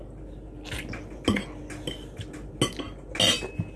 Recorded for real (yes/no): yes